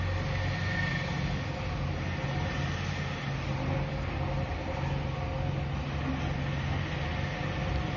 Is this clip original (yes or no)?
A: yes